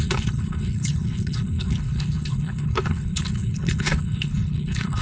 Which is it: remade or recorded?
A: remade